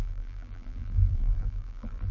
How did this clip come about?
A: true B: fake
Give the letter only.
B